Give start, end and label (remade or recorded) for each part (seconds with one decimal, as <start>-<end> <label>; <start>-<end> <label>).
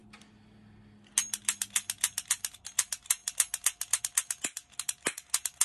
0.0-5.6 recorded